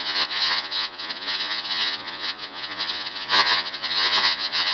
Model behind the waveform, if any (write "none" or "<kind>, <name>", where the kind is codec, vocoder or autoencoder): vocoder, Vocos